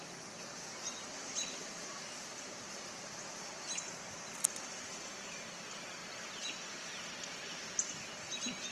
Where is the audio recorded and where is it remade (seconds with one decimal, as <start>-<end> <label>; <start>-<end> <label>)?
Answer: 0.0-8.7 recorded